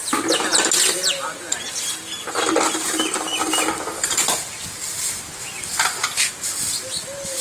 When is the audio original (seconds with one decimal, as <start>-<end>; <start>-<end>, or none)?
0.0-7.4